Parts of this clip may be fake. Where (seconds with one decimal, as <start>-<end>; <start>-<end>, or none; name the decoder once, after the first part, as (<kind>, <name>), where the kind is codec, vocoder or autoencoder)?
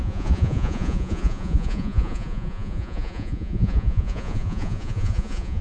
0.0-5.6 (vocoder, Vocos)